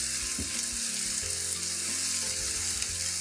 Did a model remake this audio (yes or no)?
no